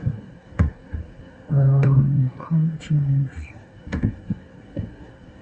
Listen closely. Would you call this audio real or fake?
fake